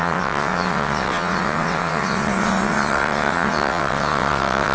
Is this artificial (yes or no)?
yes